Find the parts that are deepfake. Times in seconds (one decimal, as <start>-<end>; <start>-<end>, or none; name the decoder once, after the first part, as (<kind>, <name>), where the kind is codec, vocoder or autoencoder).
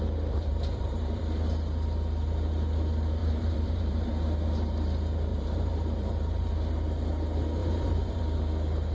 0.5-1.2 (vocoder, BigVGAN v2); 3.2-4.1; 5.3-6.5; 7.6-8.2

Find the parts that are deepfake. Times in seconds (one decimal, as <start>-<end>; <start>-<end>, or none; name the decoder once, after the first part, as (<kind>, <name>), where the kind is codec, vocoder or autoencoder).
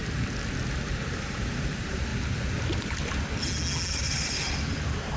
1.1-2.1 (vocoder, BigVGAN v2); 3.9-5.2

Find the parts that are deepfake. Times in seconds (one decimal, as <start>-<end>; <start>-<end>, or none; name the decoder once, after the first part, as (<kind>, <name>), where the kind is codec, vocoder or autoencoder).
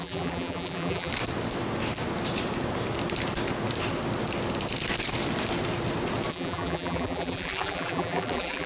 0.0-1.1 (vocoder, BigVGAN v2); 6.3-8.7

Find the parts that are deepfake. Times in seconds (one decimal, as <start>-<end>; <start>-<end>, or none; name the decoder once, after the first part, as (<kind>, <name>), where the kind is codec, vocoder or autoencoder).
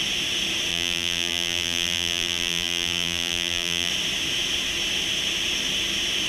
0.7-3.9 (vocoder, BigVGAN v2)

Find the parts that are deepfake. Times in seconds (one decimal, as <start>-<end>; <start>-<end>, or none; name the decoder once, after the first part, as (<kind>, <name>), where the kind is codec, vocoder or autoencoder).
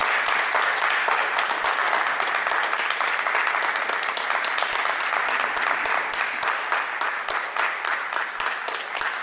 none